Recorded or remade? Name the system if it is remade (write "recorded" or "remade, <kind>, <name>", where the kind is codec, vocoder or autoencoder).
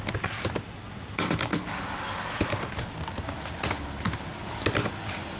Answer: recorded